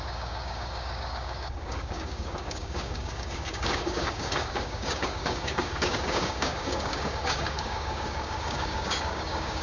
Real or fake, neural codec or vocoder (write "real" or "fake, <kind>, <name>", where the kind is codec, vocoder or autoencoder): fake, codec, DAC